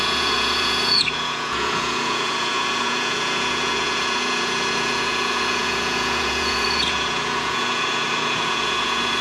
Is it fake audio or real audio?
fake